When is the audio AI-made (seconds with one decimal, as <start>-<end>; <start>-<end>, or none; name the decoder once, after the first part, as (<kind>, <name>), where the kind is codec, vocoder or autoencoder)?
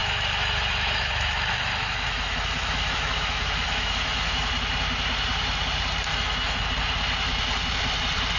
0.0-4.5 (autoencoder, DAC-VAE); 6.1-6.6